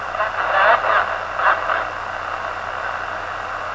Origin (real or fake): real